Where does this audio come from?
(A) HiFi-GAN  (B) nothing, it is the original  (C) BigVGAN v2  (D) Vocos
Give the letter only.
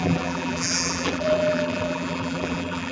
C